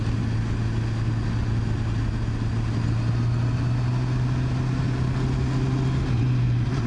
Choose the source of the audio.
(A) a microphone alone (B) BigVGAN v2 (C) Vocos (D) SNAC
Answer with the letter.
A